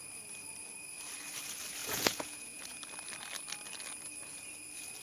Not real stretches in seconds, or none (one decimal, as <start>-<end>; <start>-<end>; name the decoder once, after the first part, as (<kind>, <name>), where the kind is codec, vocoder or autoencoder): 1.8-2.8 (vocoder, Vocos)